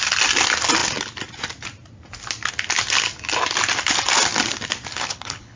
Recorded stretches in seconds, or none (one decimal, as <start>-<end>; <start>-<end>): 0.0-4.9